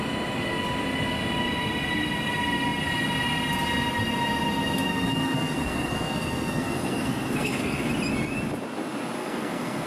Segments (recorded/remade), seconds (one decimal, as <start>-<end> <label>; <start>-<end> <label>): 0.0-4.9 recorded; 4.9-7.9 remade; 7.9-9.2 recorded; 9.2-9.9 remade